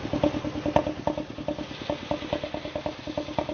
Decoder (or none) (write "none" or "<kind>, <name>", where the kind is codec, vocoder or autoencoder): none